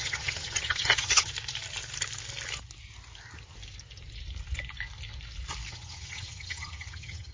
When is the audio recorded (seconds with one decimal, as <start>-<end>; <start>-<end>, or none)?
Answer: 1.3-5.7